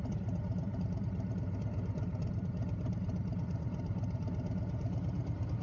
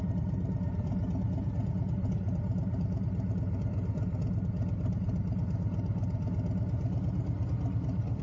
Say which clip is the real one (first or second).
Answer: second